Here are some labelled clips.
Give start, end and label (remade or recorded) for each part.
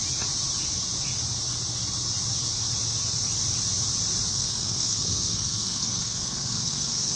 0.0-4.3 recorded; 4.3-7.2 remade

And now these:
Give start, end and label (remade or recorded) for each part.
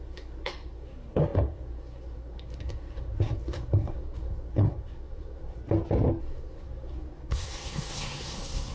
0.0-5.6 remade; 5.6-6.2 recorded; 6.2-8.7 remade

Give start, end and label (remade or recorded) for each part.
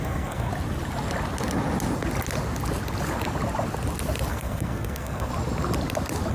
0.0-0.5 remade; 0.5-4.3 recorded; 4.3-5.3 remade; 5.3-6.3 recorded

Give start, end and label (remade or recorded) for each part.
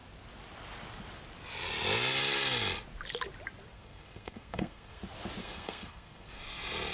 0.0-3.7 recorded; 3.7-5.0 remade; 5.0-5.4 recorded; 5.4-6.3 remade; 6.3-6.9 recorded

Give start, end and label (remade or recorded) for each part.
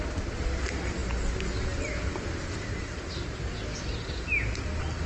0.0-5.1 recorded